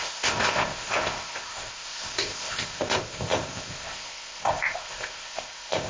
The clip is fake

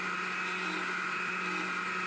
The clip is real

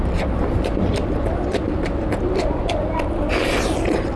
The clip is real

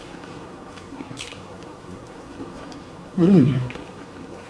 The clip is fake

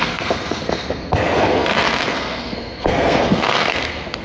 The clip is fake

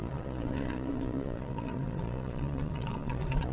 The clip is fake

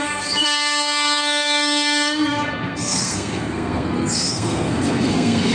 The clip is fake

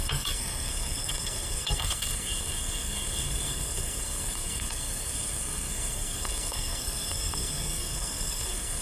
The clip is fake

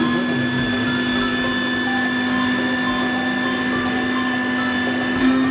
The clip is real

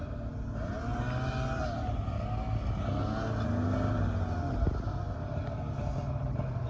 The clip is real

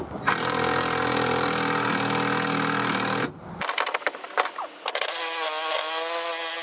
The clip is real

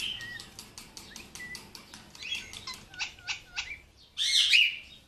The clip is real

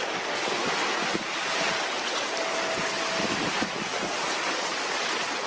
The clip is real